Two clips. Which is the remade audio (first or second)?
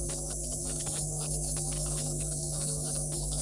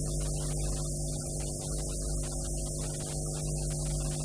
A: first